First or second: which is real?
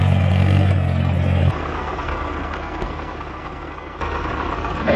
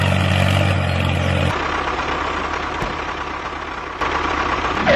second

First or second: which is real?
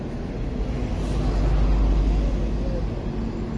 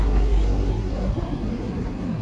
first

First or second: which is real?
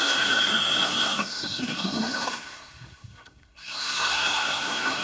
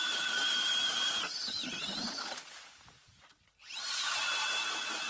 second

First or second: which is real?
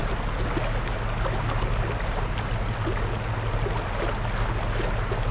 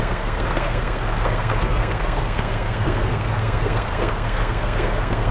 first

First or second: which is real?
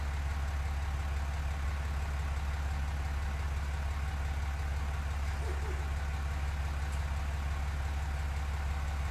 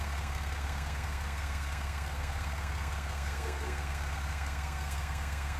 first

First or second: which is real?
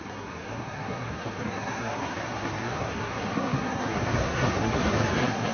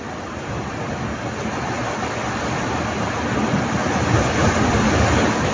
second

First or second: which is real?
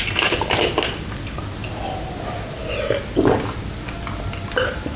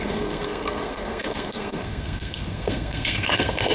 first